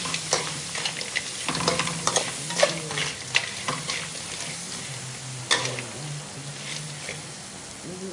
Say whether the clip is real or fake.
real